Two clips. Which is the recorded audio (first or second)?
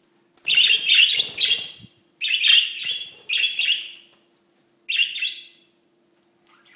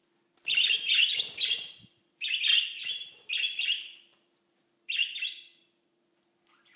first